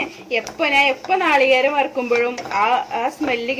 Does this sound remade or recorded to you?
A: recorded